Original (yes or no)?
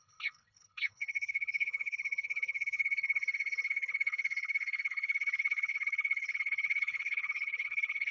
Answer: no